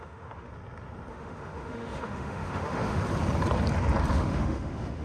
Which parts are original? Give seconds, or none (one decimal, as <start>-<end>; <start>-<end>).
0.5-1.1; 3.0-4.1